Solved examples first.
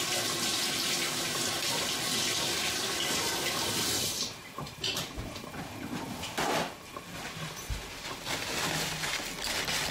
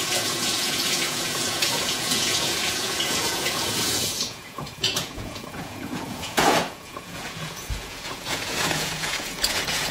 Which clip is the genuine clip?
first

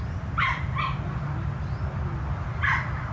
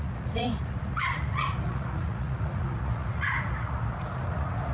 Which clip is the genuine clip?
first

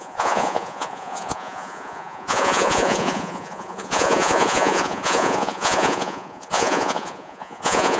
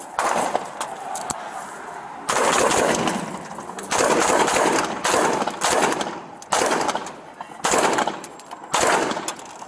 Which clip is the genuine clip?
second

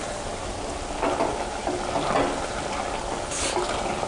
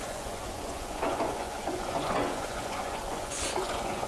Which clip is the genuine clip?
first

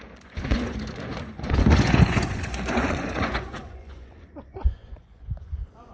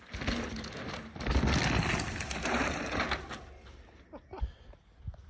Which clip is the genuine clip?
second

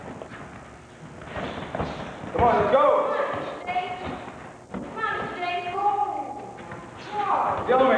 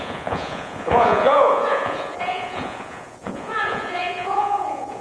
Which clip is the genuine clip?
first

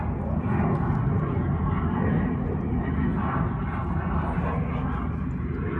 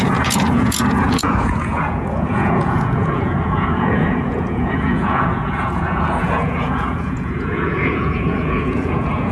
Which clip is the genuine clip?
first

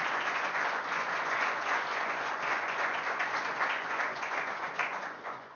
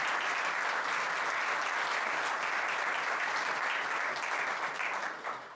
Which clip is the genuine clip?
second